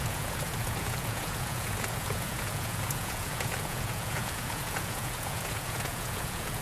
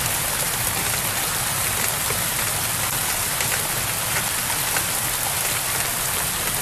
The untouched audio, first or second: second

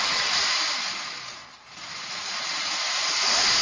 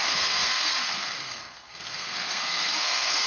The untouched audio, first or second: first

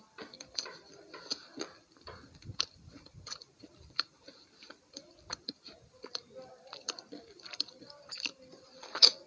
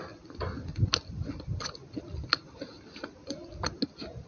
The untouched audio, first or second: second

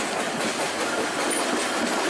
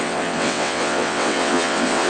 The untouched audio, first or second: first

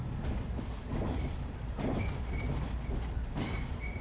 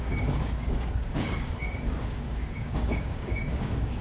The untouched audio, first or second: first